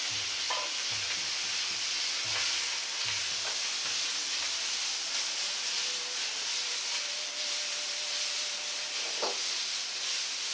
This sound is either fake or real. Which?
real